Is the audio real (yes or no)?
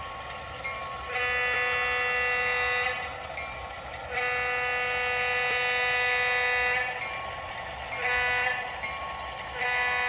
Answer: yes